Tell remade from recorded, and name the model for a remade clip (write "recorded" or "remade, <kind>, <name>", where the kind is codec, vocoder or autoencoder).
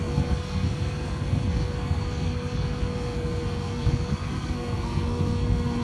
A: remade, codec, SNAC